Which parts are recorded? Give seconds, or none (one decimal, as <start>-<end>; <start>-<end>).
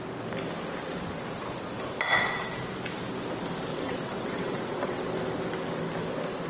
0.0-3.7; 5.0-6.5